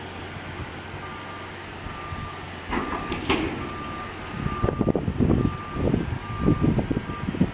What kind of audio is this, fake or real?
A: real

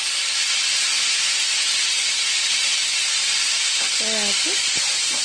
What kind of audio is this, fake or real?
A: real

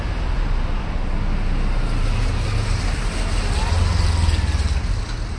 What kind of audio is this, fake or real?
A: real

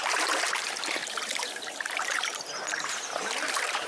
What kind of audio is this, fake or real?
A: fake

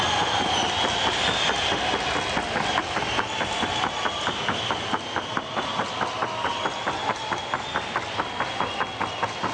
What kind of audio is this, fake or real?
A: real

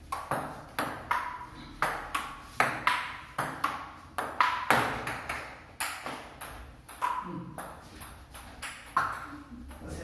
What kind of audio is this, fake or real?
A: real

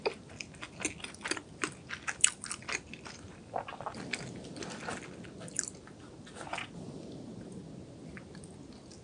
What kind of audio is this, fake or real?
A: real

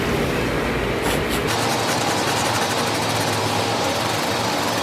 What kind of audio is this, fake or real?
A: real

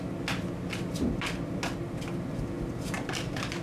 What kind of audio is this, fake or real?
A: real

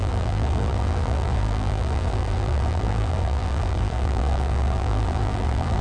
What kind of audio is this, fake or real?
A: fake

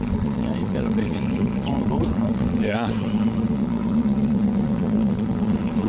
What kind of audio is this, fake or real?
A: fake